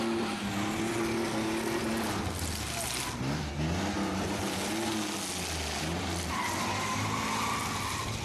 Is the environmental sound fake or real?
real